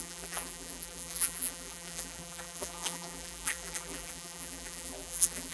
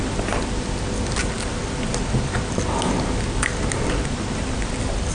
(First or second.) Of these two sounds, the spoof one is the first